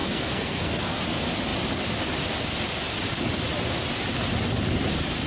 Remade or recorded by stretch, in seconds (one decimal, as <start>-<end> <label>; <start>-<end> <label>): 0.0-1.0 remade; 1.0-5.3 recorded